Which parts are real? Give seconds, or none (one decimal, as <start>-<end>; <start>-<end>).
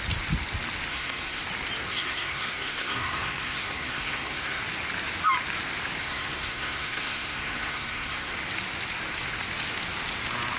0.0-0.9; 1.4-1.8; 4.6-6.0; 8.3-10.6